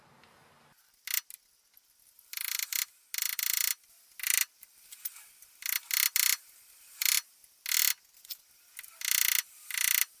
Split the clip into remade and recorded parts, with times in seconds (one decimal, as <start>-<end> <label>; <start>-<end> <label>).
0.0-10.2 recorded